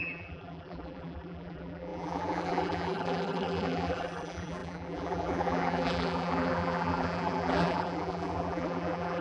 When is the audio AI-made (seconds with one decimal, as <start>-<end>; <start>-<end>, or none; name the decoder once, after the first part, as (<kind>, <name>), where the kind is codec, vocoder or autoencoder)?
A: 0.0-9.2 (vocoder, BigVGAN v2)